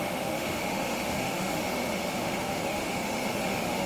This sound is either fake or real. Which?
fake